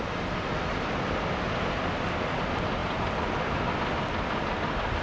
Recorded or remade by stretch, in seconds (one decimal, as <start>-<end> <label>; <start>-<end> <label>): 0.0-2.8 recorded; 2.8-3.7 remade; 3.7-5.0 recorded